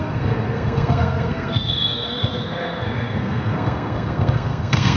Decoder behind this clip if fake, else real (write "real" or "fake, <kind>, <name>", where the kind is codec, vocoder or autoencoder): fake, codec, SNAC